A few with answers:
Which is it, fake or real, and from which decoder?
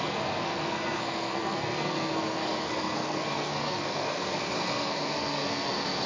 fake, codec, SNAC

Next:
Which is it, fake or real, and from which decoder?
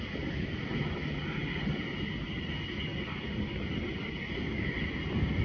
real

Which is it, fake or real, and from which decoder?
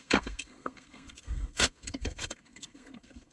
fake, codec, SNAC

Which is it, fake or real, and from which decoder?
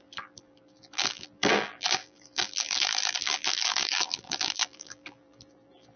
fake, vocoder, BigVGAN v2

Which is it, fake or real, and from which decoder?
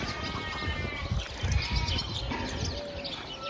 real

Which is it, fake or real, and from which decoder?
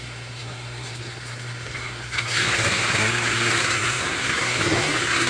fake, codec, SNAC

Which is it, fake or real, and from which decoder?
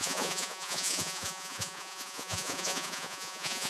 fake, vocoder, Vocos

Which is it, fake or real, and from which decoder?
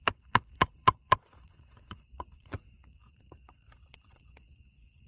fake, vocoder, Vocos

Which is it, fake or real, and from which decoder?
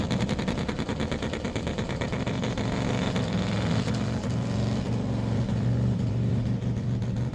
fake, vocoder, BigVGAN v2